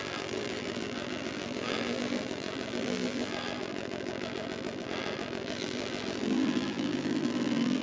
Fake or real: fake